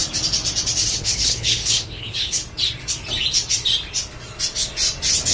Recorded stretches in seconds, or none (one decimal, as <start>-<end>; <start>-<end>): 0.0-1.0; 2.4-5.3